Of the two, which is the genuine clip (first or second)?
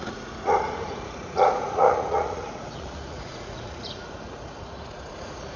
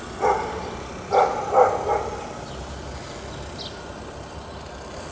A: second